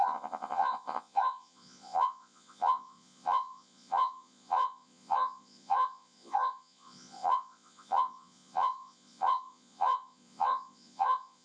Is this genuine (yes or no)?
no